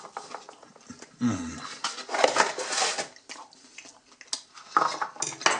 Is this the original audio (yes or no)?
yes